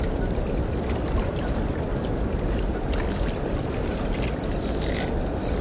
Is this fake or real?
real